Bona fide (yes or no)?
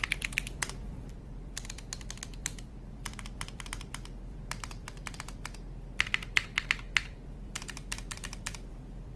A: no